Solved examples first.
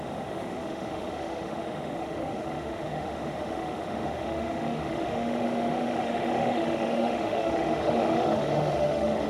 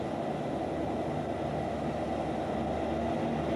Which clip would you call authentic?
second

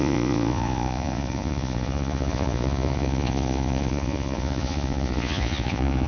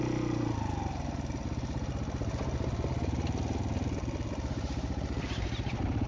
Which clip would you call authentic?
second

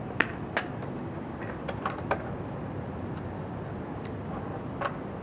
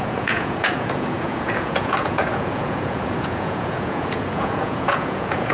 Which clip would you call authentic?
first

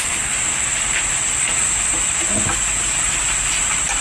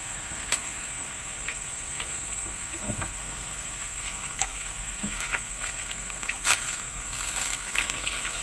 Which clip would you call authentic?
first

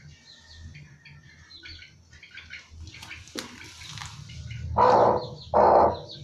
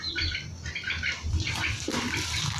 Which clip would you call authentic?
first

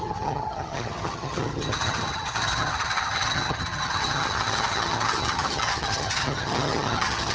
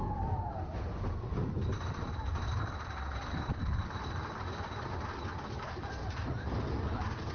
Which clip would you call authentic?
second